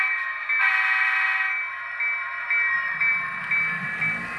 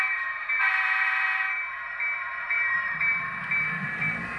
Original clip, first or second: first